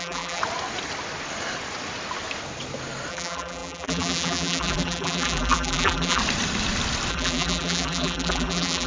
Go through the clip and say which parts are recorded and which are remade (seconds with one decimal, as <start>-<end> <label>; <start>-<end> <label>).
0.0-0.4 remade; 0.4-3.1 recorded; 3.1-6.2 remade; 6.2-7.1 recorded; 7.1-8.9 remade